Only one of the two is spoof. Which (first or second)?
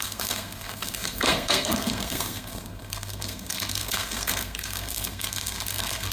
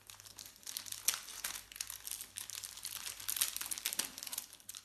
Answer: first